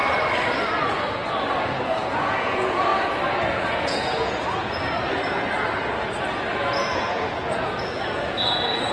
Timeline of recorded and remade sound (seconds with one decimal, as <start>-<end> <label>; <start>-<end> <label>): 0.0-1.6 recorded; 1.6-2.9 remade; 2.9-3.5 recorded; 3.5-4.8 remade; 4.8-6.6 recorded; 6.6-8.9 remade